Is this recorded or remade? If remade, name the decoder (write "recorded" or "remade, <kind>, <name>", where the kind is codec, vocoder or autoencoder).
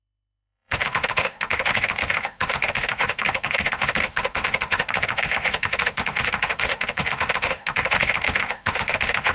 remade, autoencoder, DAC-VAE